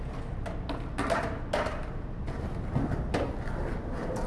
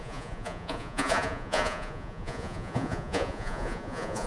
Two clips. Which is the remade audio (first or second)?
second